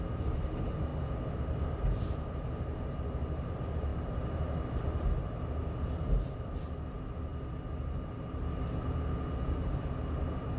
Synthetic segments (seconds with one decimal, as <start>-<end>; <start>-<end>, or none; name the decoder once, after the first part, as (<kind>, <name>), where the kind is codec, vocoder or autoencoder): none